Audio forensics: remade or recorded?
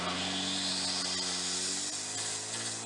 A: recorded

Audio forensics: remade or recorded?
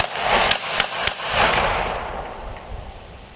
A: recorded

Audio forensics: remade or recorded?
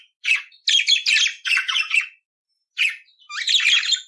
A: recorded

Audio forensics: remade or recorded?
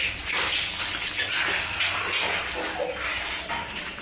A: recorded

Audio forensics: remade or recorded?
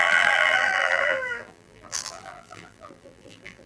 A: remade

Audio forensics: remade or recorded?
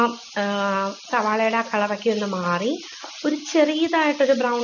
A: recorded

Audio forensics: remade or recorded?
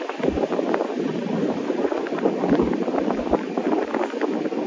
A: recorded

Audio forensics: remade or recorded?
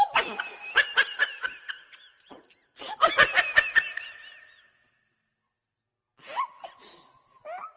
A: recorded